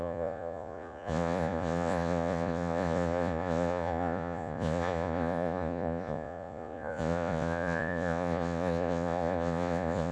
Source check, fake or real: fake